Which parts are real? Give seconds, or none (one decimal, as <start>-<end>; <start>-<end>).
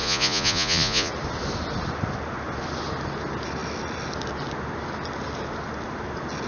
1.1-6.5